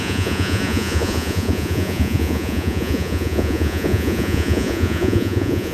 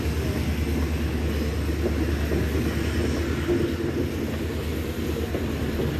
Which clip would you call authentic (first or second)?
second